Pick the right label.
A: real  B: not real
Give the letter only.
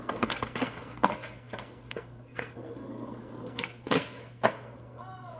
B